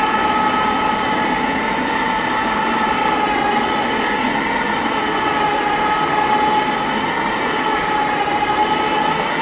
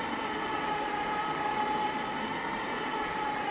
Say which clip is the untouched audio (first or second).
first